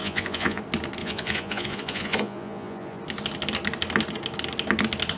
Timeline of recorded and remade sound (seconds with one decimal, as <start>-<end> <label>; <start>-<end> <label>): 0.0-0.6 remade; 0.6-1.0 recorded; 1.0-3.0 remade; 3.0-5.2 recorded